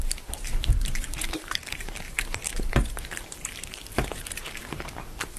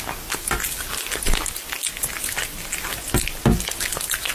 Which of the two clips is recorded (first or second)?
second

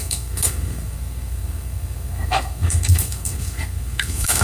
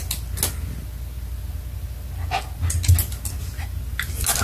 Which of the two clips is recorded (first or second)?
second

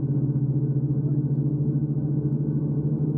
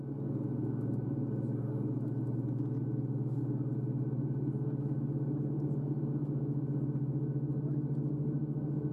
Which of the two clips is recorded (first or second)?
second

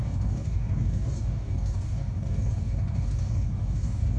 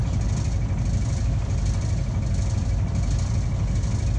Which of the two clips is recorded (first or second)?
second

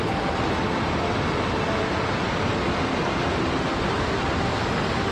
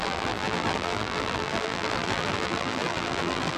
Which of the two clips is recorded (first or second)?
first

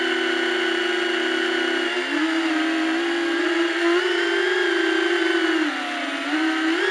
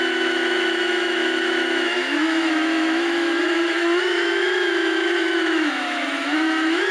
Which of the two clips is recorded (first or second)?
first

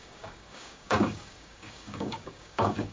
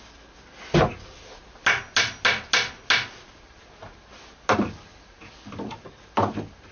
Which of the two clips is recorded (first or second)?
second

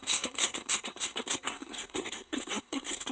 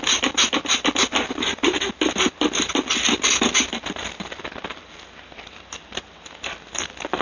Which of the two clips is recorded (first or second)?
second